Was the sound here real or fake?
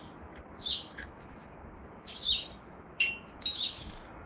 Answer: fake